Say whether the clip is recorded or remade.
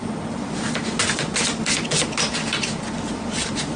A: recorded